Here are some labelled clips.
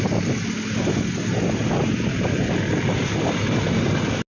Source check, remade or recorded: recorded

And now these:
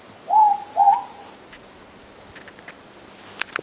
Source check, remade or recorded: recorded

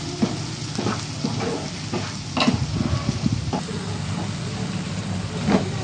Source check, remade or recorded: recorded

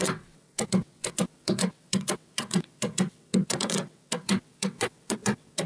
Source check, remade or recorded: remade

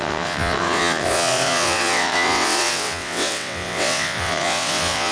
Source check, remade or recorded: remade